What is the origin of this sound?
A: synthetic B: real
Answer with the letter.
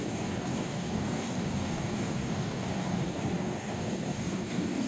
A